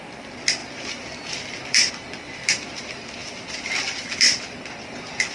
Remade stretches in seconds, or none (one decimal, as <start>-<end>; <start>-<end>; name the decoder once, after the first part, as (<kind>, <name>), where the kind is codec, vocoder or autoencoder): 0.0-5.3 (vocoder, BigVGAN v2)